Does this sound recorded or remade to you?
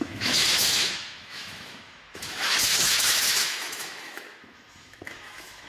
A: remade